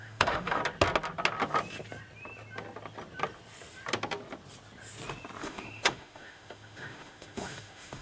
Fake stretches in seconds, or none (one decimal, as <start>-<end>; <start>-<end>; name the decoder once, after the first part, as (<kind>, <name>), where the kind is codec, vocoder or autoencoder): 0.0-0.6 (autoencoder, DAC-VAE); 5.4-8.0